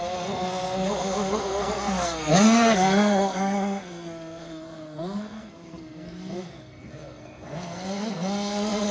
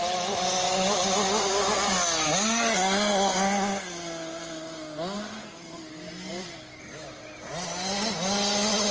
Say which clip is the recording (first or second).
second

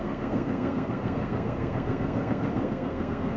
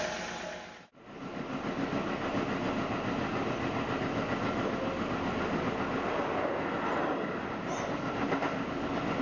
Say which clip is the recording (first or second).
second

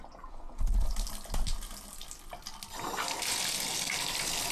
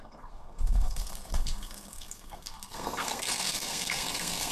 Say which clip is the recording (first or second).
first